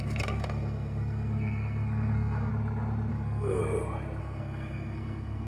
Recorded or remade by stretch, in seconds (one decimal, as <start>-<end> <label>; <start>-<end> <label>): 0.0-2.5 remade; 2.5-3.1 recorded; 3.1-3.6 remade; 3.6-4.2 recorded; 4.2-5.5 remade